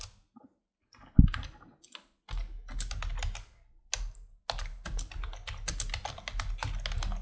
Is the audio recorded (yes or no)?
yes